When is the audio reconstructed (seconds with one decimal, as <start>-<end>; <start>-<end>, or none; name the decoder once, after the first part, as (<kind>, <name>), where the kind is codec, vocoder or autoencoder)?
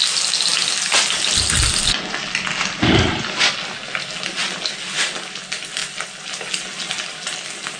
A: none